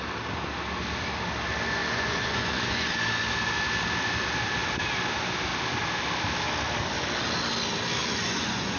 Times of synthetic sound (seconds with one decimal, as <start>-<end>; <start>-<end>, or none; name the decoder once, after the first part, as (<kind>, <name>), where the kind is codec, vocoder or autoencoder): 1.8-2.9 (vocoder, Vocos); 8.0-8.8